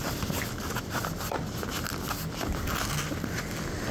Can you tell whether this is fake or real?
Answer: real